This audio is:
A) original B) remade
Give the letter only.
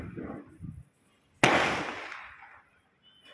A